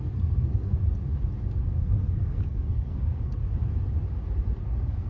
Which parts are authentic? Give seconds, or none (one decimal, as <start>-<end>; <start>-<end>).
0.8-1.8; 3.4-4.6